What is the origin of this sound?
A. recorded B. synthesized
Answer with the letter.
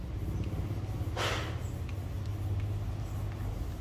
A